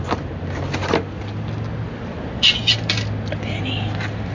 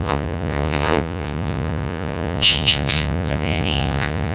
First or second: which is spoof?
second